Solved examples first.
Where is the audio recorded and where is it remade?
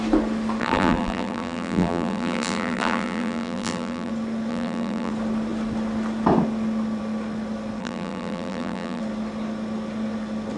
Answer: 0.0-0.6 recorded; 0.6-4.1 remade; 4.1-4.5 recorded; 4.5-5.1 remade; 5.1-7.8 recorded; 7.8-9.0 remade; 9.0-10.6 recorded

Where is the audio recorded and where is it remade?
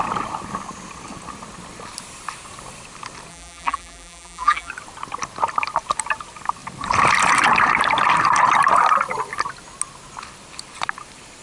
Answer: 0.0-3.3 recorded; 3.3-4.7 remade; 4.7-11.4 recorded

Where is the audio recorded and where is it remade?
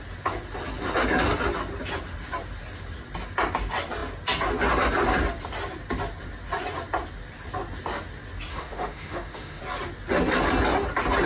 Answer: 0.0-8.5 recorded; 8.5-9.6 remade; 9.6-11.3 recorded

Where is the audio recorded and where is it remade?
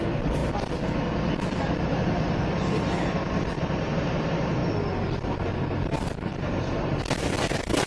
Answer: 0.0-0.4 remade; 0.4-1.6 recorded; 1.6-4.6 remade; 4.6-6.3 recorded; 6.3-7.9 remade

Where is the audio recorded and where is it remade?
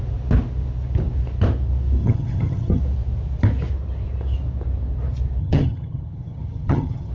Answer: 0.0-2.0 recorded; 2.0-2.8 remade; 2.8-5.4 recorded; 5.4-7.1 remade